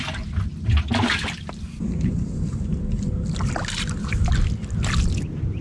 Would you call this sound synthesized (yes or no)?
no